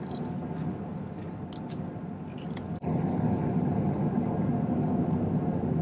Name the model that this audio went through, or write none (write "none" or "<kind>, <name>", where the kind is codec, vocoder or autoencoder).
none